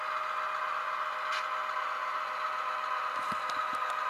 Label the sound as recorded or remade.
recorded